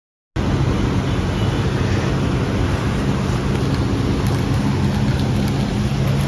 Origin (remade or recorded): recorded